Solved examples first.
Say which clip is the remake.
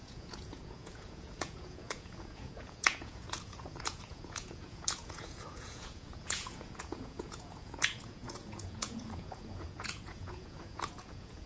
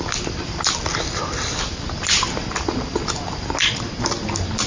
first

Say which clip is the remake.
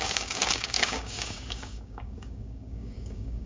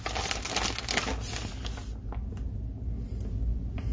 first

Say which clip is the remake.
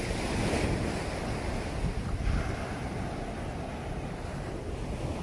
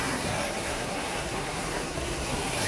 second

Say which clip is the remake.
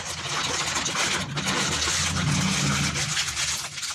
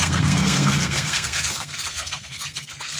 second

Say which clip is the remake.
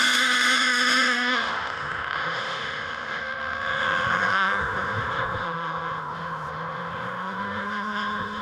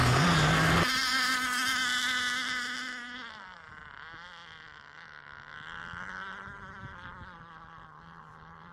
first